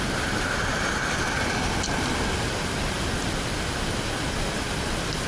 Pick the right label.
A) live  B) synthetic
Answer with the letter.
A